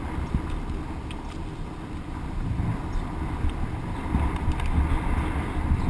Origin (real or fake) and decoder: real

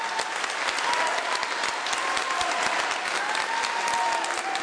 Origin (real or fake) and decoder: real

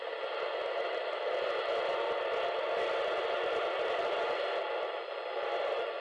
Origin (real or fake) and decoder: real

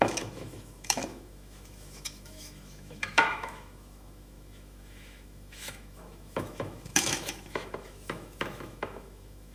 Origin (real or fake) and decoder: fake, autoencoder, DAC-VAE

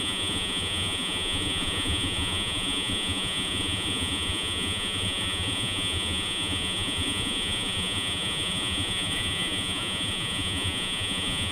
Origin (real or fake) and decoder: fake, vocoder, Vocos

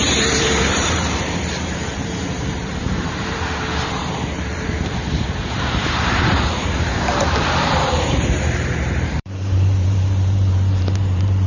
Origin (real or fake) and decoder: fake, vocoder, BigVGAN v2